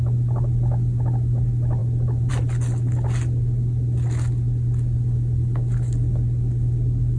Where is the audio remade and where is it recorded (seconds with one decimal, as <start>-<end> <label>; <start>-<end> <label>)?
0.0-7.2 recorded